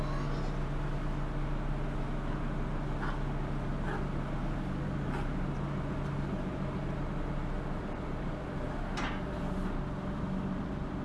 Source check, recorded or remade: recorded